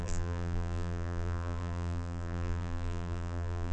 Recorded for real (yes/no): no